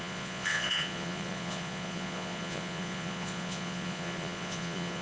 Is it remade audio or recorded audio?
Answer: remade